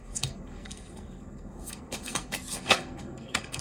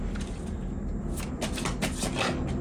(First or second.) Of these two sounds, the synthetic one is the first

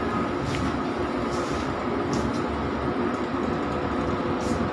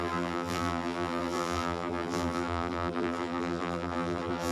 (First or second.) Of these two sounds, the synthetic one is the second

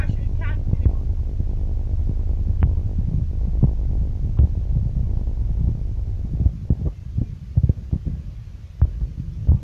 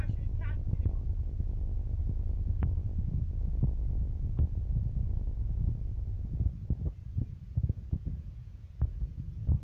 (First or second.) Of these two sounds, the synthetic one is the second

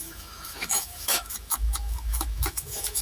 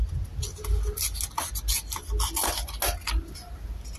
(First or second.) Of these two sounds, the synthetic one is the first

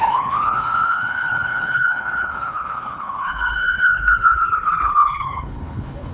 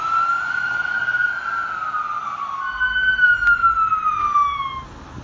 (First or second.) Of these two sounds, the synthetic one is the first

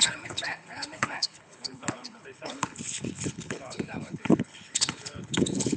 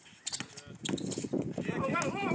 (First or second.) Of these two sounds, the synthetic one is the first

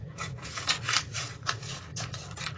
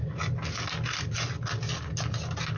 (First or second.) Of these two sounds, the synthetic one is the first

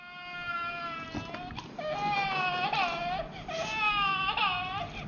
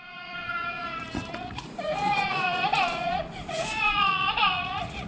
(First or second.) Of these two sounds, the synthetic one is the second